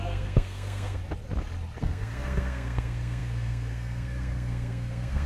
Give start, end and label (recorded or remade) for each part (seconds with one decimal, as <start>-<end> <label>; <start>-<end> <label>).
0.0-1.0 remade; 1.0-1.8 recorded; 1.8-5.3 remade